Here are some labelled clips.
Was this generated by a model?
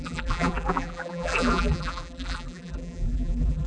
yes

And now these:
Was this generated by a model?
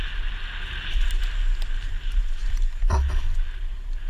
no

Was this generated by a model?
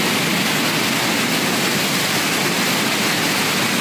no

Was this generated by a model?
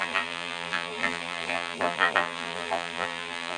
yes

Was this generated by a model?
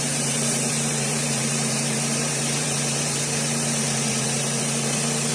yes